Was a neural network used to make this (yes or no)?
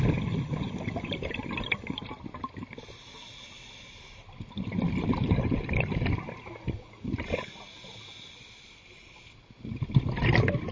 no